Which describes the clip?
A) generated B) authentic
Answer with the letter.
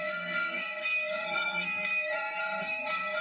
A